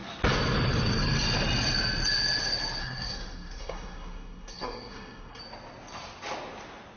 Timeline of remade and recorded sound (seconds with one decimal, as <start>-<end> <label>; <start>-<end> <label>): 0.0-2.8 recorded; 2.8-5.4 remade; 5.4-7.0 recorded